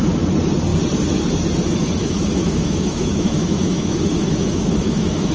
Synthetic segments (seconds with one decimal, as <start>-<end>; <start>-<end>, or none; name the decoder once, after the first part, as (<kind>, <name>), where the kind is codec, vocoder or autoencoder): 2.0-5.3 (autoencoder, DAC-VAE)